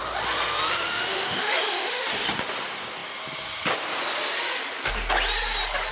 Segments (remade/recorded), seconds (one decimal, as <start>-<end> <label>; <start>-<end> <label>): 0.0-0.9 recorded; 0.9-2.0 remade; 2.0-5.9 recorded